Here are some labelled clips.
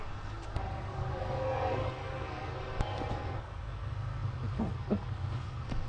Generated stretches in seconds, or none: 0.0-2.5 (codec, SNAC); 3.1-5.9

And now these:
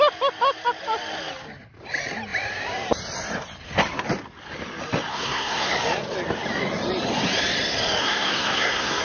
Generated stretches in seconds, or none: 5.1-5.7 (codec, SNAC); 8.0-9.0

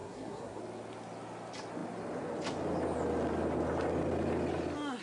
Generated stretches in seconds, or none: 0.0-0.6 (codec, SNAC)